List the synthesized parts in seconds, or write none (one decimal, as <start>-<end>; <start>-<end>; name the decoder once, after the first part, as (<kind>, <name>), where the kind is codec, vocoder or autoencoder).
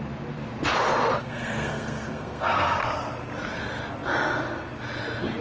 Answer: 1.2-2.8 (codec, SNAC)